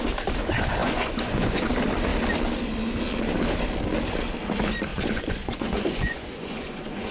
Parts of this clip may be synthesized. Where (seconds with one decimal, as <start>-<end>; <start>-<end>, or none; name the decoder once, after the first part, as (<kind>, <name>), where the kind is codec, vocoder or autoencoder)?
0.8-1.7 (vocoder, Vocos); 4.9-7.1